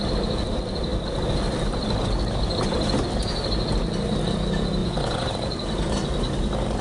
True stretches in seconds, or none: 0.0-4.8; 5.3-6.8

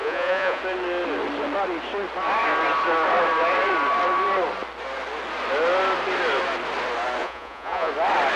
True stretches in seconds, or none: 0.6-7.2; 7.9-8.4

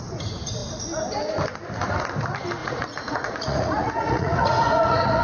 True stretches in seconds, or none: 0.0-2.6